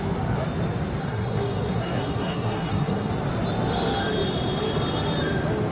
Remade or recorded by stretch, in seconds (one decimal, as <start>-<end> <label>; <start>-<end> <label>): 0.0-1.0 recorded; 1.0-3.1 remade; 3.1-5.7 recorded